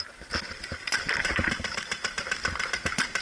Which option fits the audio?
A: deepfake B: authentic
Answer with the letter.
B